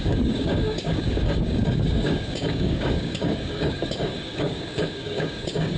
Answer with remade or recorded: remade